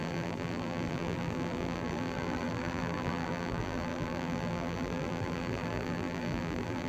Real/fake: fake